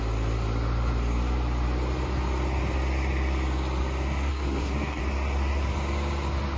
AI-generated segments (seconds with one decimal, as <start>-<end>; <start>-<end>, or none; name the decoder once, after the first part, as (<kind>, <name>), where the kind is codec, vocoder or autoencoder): 4.3-5.0 (codec, SNAC)